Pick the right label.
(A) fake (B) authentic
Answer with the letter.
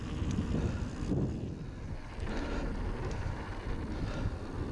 B